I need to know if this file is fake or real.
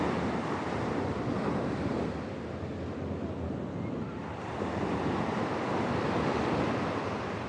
real